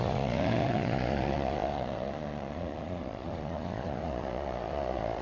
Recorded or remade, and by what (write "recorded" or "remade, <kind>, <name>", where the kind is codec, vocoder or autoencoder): remade, vocoder, Vocos